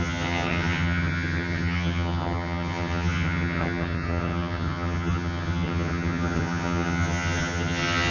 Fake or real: fake